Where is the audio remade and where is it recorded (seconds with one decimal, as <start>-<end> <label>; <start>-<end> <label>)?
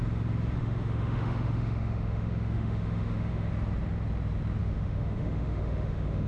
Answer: 0.0-0.6 recorded; 0.6-3.5 remade; 3.5-4.6 recorded; 4.6-6.3 remade